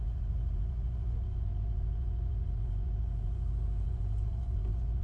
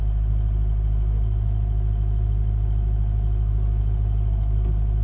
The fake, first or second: first